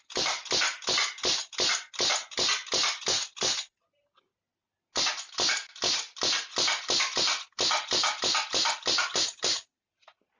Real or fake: real